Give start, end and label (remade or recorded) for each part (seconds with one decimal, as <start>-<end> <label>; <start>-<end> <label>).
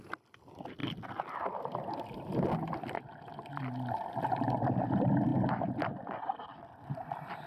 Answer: 0.0-7.5 recorded